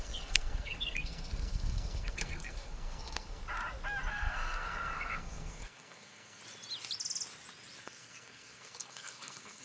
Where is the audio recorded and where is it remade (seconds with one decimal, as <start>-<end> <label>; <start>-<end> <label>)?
0.0-3.4 remade; 3.4-4.1 recorded; 4.1-6.4 remade; 6.4-7.8 recorded; 7.8-9.6 remade